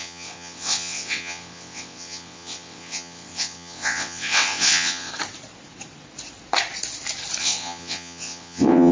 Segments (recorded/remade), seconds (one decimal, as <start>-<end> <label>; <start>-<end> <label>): 0.0-5.1 remade; 5.1-7.4 recorded; 7.4-8.9 remade